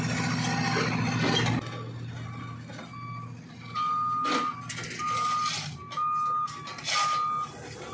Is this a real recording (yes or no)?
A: yes